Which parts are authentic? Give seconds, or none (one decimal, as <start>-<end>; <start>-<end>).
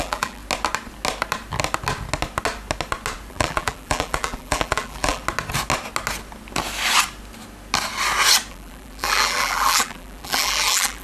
0.4-3.3; 5.2-8.5